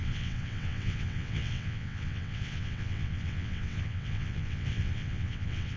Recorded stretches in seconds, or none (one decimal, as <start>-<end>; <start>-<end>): none